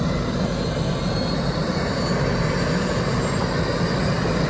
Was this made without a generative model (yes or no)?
no